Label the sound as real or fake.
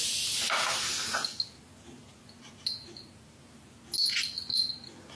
real